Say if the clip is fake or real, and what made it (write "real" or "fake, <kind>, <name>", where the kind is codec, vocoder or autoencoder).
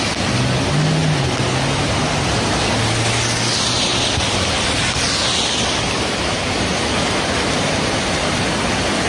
real